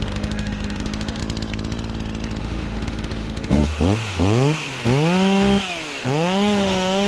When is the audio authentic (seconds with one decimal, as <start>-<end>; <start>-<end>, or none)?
1.2-2.4; 4.8-6.0